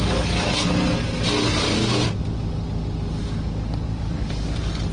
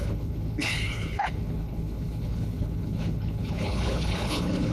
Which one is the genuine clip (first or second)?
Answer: first